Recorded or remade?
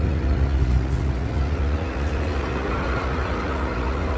remade